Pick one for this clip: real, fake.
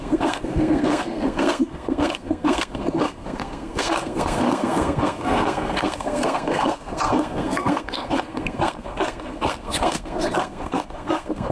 fake